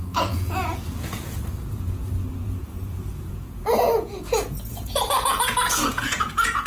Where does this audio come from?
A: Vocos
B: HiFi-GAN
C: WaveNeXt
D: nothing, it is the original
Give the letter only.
A